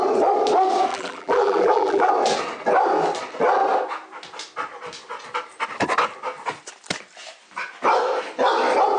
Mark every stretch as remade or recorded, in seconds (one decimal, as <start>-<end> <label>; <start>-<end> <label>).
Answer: 0.0-0.9 recorded; 0.9-2.1 remade; 2.1-9.0 recorded